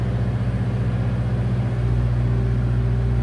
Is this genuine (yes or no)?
yes